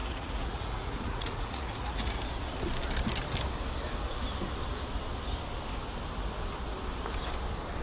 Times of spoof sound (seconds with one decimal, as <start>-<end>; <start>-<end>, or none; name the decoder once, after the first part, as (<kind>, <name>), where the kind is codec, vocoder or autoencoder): 0.0-2.2 (vocoder, Vocos)